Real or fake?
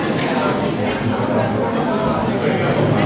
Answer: real